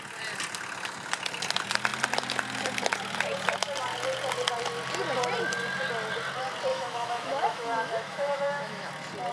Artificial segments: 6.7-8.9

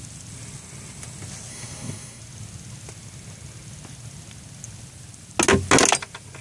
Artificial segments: 1.5-2.2

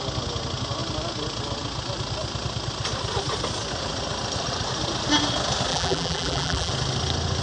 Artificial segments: 5.7-6.7

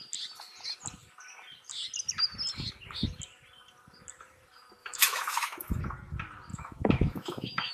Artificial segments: 4.8-5.8; 6.5-7.7

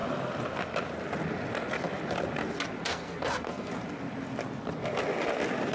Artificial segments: 2.9-3.7